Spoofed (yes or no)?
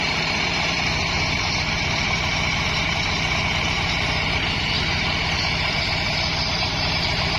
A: yes